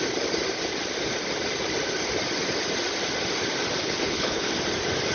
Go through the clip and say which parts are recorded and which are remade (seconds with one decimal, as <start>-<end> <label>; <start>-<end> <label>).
0.0-3.8 recorded; 3.8-4.5 remade; 4.5-5.1 recorded